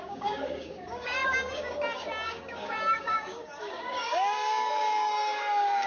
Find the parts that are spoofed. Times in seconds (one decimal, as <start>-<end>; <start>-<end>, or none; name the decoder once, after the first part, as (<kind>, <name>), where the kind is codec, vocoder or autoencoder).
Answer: 0.0-5.9 (codec, DAC)